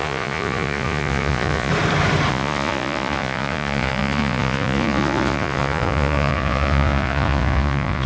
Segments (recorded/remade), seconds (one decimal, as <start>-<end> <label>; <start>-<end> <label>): 0.0-1.7 remade; 1.7-2.3 recorded; 2.3-8.1 remade